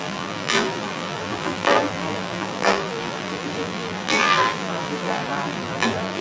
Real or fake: fake